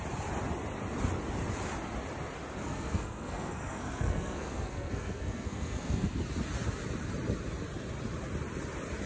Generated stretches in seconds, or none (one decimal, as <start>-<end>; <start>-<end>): 2.6-6.2